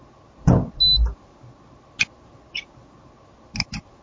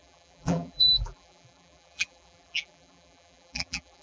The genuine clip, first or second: first